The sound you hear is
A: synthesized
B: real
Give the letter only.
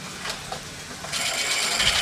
B